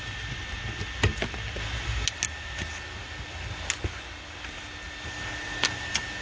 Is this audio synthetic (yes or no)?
no